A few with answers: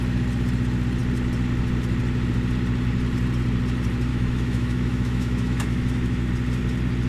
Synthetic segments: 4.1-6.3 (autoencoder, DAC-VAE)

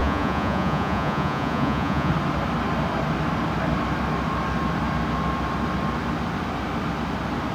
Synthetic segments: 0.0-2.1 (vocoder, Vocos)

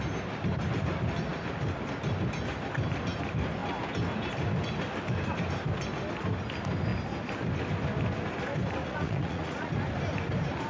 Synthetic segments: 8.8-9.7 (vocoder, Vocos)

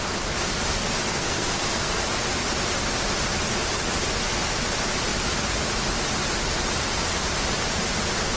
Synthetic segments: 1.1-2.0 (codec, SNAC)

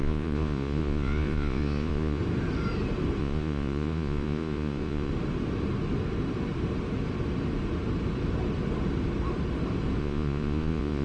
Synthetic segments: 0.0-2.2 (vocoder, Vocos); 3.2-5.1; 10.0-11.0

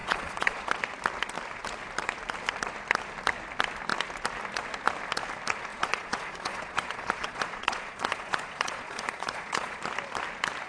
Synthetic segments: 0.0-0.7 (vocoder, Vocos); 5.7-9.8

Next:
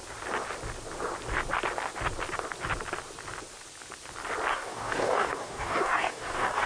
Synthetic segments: 4.5-6.7 (codec, DAC)

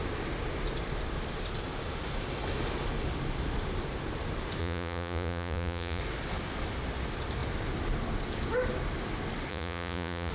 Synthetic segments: 4.6-6.0 (vocoder, Vocos); 9.5-10.3